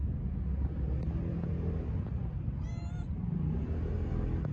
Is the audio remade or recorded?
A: recorded